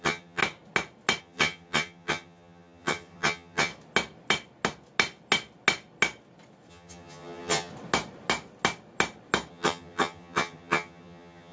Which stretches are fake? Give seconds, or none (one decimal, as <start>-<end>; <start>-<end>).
0.0-0.4; 1.2-3.7; 6.7-7.7; 9.5-11.5